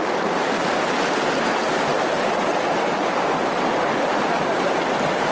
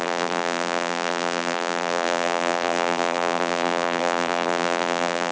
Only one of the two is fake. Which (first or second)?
second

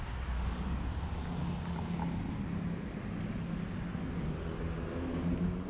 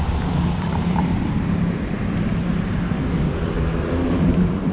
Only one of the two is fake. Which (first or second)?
second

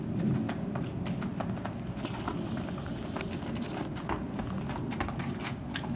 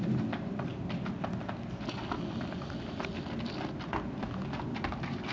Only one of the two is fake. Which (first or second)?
first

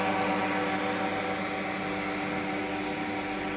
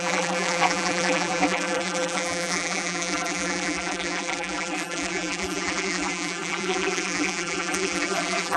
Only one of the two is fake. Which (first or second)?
second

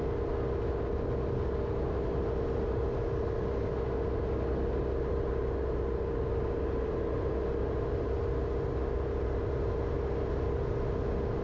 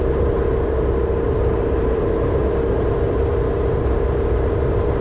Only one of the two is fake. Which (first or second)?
second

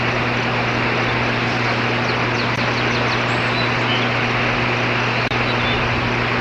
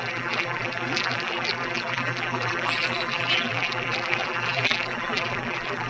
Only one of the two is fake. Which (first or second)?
second